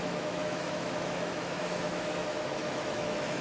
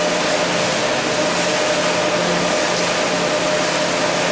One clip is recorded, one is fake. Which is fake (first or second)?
first